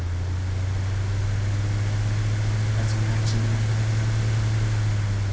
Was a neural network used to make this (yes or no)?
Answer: no